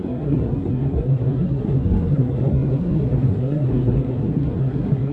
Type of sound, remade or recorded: remade